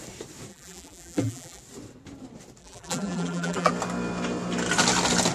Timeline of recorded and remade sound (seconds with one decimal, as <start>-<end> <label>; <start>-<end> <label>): 0.0-0.5 recorded; 0.5-1.6 remade; 1.6-2.6 recorded; 2.6-3.7 remade; 3.7-5.3 recorded